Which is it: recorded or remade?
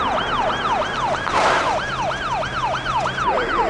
recorded